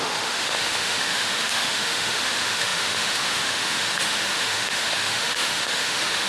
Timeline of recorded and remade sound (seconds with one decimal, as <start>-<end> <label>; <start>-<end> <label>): 0.0-6.3 remade